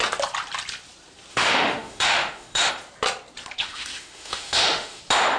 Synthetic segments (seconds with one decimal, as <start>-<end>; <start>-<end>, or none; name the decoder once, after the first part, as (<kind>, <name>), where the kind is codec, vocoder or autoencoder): 1.3-2.7 (autoencoder, DAC-VAE); 3.6-5.0